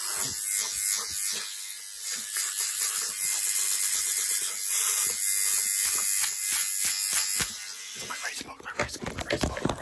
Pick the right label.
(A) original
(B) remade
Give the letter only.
A